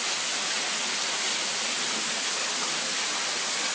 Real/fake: real